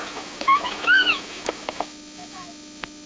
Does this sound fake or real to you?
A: fake